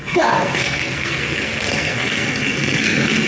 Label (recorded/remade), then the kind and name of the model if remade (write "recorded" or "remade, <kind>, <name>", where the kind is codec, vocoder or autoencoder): remade, codec, SNAC